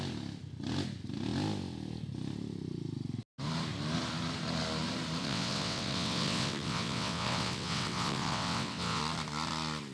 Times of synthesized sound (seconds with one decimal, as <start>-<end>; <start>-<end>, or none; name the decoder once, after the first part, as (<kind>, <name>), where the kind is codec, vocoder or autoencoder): 5.2-9.0 (vocoder, WaveNeXt)